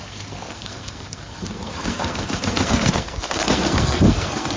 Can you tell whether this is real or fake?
fake